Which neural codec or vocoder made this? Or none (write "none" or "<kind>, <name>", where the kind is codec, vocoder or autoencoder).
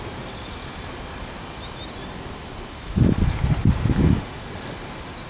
none